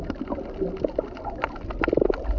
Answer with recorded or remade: recorded